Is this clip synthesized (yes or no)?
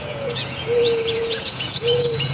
yes